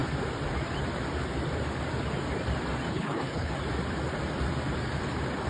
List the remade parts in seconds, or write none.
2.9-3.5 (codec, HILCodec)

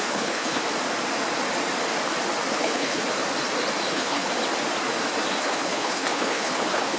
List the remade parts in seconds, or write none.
0.0-0.6 (codec, HILCodec); 2.5-3.0; 3.9-4.3; 5.4-7.0

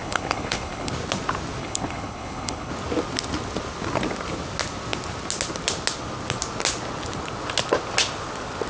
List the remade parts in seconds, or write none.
0.0-0.9 (codec, HILCodec); 1.6-2.7

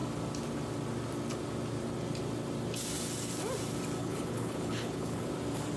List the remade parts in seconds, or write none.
4.0-5.3 (codec, HILCodec)

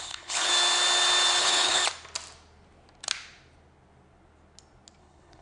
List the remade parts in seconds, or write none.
0.0-0.5 (codec, HILCodec); 1.4-1.8; 5.0-5.4

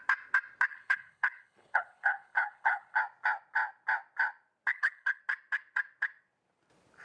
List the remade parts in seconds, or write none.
0.7-3.0 (codec, HILCodec); 4.7-5.2